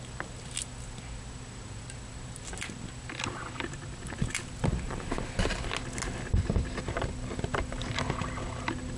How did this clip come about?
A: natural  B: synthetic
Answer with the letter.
A